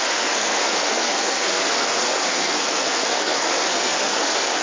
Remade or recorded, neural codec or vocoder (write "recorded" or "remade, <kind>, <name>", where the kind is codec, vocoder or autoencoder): remade, codec, SNAC